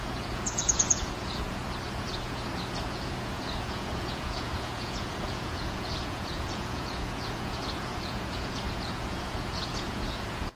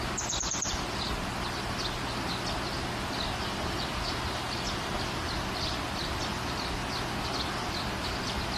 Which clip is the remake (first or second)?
first